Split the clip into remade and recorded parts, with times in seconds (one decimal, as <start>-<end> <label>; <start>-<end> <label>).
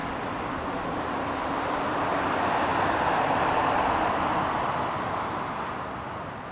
0.0-0.7 remade; 0.7-6.5 recorded